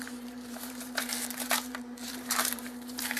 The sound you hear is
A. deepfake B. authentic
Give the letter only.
A